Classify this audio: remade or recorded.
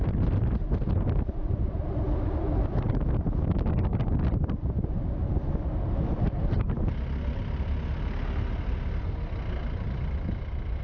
recorded